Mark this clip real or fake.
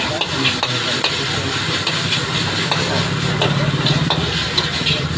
real